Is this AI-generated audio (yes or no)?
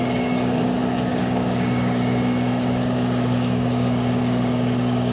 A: yes